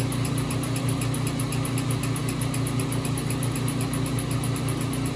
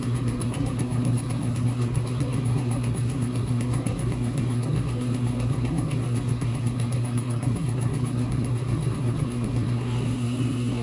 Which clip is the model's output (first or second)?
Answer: second